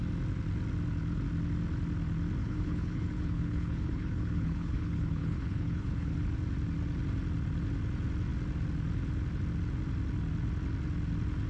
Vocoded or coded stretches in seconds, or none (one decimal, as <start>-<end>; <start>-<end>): 2.4-6.2

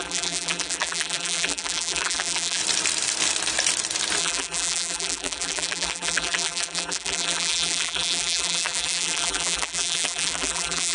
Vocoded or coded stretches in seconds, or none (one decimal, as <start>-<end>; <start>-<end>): 0.0-2.6; 4.2-10.9